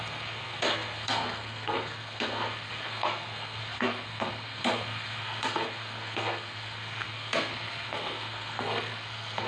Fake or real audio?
fake